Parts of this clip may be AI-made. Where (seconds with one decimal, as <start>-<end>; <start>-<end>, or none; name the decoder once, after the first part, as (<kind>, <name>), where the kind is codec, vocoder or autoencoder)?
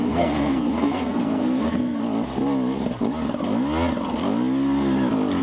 0.0-2.0 (codec, SNAC)